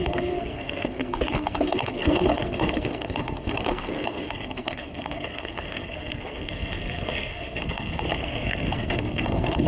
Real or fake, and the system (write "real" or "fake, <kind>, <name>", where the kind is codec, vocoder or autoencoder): fake, codec, SNAC